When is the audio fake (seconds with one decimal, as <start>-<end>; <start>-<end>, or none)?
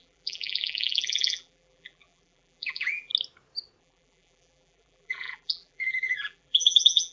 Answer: 0.0-3.1; 3.8-7.1